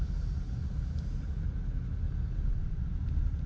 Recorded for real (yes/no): yes